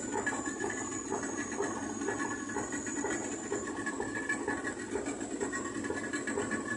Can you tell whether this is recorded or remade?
recorded